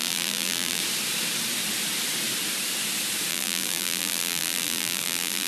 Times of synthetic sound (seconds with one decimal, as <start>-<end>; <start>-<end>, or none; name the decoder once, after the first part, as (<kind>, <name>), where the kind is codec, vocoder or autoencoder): 0.0-0.8 (vocoder, BigVGAN v2); 3.3-5.5

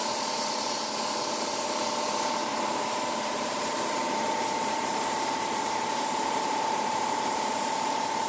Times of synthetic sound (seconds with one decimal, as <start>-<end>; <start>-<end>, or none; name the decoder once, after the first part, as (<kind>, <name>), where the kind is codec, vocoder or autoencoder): 1.4-2.4 (vocoder, BigVGAN v2); 3.3-8.3

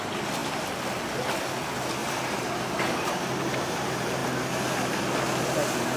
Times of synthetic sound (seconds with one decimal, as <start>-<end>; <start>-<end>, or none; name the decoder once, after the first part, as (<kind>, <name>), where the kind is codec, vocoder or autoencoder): 2.0-3.6 (vocoder, BigVGAN v2)

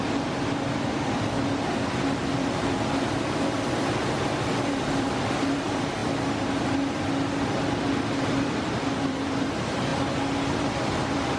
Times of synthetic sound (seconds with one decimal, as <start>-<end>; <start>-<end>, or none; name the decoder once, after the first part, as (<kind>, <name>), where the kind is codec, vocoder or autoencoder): 0.0-6.0 (vocoder, BigVGAN v2); 8.2-9.9; 10.5-11.4

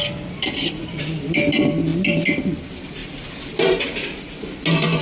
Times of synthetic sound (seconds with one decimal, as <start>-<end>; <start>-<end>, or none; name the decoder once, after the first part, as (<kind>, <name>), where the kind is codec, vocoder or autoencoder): 3.0-4.2 (vocoder, BigVGAN v2)